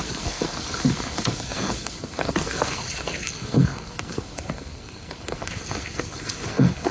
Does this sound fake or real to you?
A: fake